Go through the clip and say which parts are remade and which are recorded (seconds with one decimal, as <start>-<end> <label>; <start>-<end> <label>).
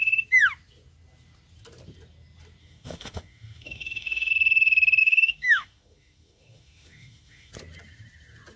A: 0.0-2.6 recorded; 2.6-4.3 remade; 4.3-5.0 recorded; 5.0-7.5 remade; 7.5-8.6 recorded